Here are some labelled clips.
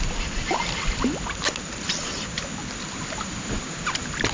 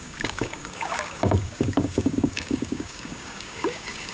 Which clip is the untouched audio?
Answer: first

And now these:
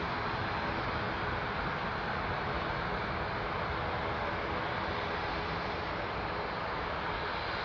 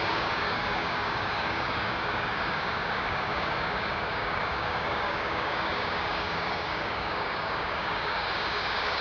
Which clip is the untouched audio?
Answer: first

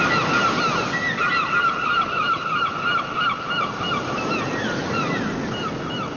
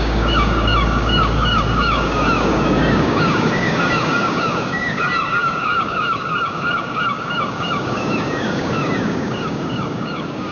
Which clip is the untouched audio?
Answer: first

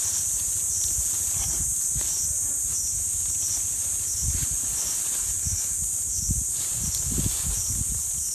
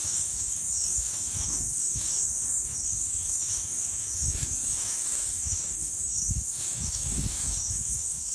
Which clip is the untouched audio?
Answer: first